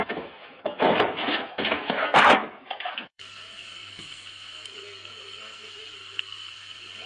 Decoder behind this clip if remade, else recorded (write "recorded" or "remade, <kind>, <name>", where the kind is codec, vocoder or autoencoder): remade, codec, SNAC